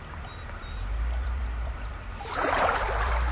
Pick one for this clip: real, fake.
fake